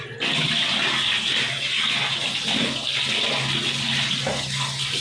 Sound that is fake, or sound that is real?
real